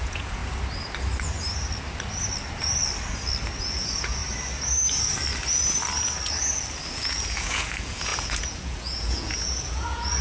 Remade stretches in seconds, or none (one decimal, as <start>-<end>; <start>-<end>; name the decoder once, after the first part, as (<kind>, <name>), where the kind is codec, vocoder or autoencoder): 0.0-0.4 (vocoder, Vocos); 3.6-4.2; 6.9-10.2

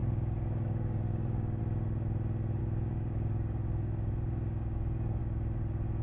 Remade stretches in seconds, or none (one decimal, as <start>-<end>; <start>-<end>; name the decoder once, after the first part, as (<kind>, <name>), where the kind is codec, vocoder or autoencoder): 0.0-1.6 (codec, DAC); 2.6-5.2

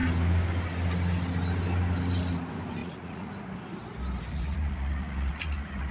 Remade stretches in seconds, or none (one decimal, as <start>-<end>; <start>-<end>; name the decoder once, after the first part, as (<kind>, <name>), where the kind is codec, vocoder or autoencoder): 2.8-3.3 (vocoder, Vocos); 4.3-5.9

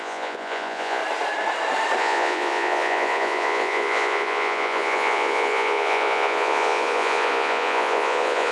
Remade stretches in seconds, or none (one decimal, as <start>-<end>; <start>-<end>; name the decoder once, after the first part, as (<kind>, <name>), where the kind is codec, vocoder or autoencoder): 0.0-1.0 (vocoder, Vocos); 2.0-8.5